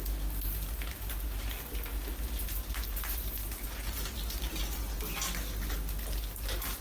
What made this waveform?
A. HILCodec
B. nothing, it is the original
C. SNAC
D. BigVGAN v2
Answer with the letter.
B